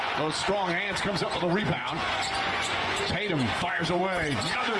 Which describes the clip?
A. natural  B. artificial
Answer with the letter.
B